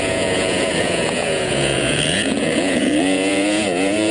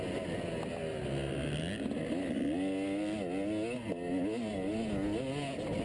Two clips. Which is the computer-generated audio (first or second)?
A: first